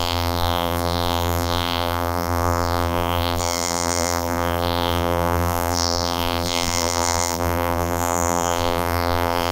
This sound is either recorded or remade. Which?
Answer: remade